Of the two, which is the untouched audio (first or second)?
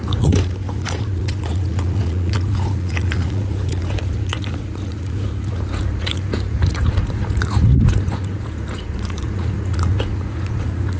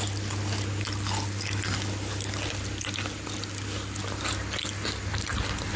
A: second